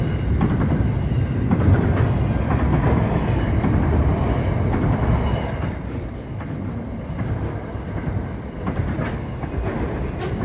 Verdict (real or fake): real